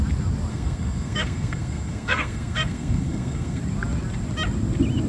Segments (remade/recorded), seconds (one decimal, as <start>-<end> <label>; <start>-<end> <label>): 0.0-0.5 recorded; 0.5-3.6 remade; 3.6-5.1 recorded